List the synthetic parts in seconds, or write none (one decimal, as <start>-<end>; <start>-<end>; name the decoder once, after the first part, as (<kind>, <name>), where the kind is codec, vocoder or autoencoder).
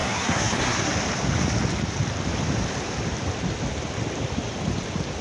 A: 0.0-0.9 (codec, SNAC)